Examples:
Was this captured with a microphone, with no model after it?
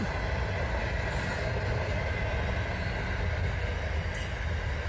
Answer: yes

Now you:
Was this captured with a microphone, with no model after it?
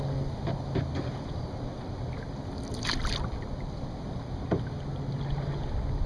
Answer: yes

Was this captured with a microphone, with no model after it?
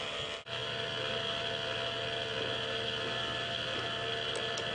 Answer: yes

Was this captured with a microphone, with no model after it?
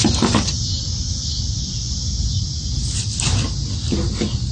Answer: yes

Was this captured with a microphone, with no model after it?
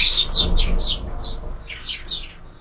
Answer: yes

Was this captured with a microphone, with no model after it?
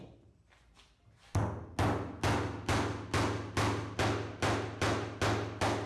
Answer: yes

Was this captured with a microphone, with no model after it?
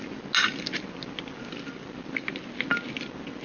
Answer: yes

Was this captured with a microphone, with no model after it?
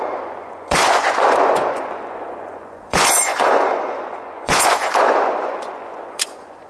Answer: no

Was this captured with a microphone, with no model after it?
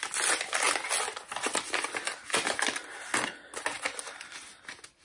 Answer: yes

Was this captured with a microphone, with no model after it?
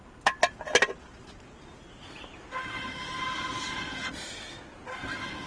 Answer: yes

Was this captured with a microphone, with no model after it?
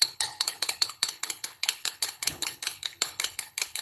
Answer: no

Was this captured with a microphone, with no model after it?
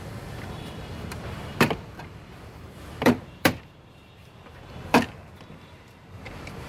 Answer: no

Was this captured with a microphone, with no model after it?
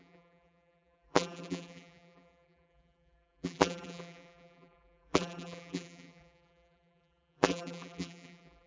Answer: no